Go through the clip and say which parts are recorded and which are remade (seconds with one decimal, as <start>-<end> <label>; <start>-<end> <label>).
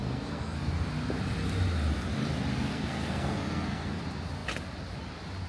0.0-0.7 remade; 0.7-2.7 recorded; 2.7-4.0 remade; 4.0-5.5 recorded